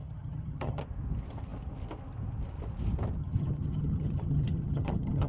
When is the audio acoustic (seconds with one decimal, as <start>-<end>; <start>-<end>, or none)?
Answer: 0.8-3.2